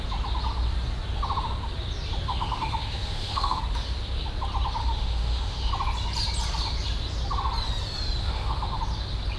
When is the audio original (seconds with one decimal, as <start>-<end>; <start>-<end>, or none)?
0.0-2.3; 3.6-4.8; 5.7-8.2; 8.8-9.4